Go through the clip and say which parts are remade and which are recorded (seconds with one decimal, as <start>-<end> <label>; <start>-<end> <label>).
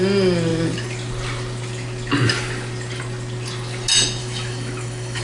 0.0-4.2 recorded; 4.2-5.2 remade